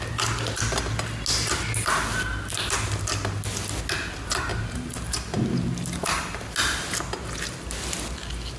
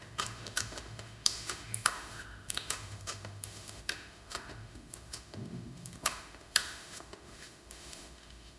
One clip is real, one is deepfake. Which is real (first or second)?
first